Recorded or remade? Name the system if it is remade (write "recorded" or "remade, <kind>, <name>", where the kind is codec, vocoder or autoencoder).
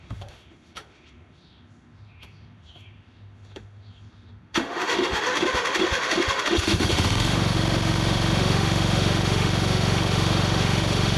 remade, autoencoder, DAC-VAE